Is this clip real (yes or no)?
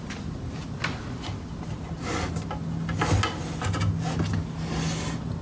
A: yes